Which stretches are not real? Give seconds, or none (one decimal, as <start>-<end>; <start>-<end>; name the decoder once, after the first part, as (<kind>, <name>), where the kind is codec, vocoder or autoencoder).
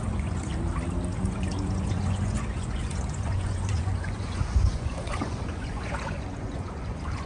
0.0-0.5 (vocoder, Vocos); 1.1-7.3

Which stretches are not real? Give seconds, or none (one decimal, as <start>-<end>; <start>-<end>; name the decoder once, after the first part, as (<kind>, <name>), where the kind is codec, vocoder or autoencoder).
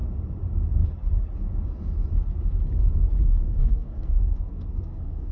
3.2-5.3 (codec, SNAC)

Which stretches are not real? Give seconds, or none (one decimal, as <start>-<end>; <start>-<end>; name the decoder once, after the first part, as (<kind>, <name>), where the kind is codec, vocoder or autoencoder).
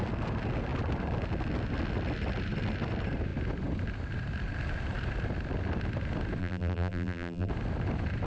6.4-7.5 (vocoder, BigVGAN v2)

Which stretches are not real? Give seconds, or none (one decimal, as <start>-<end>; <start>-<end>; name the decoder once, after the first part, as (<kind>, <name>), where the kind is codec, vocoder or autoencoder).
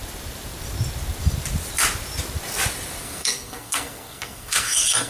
3.0-5.1 (codec, SNAC)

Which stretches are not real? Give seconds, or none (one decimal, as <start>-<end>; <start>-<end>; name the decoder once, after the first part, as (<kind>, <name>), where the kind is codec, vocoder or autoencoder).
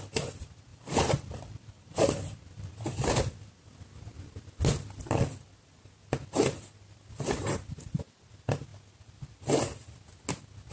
0.7-3.1 (vocoder, BigVGAN v2)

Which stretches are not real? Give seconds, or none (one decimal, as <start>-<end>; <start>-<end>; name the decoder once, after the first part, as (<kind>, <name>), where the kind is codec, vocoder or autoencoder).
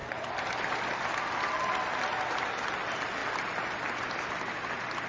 none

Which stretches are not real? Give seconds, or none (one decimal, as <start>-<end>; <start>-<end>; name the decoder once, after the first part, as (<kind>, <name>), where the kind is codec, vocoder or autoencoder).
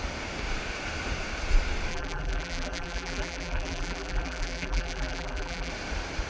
1.9-5.7 (vocoder, BigVGAN v2)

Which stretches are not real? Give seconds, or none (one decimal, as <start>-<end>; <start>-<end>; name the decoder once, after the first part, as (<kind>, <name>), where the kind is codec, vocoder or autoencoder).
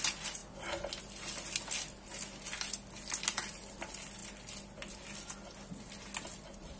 none